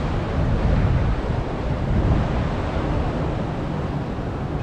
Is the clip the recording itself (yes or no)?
yes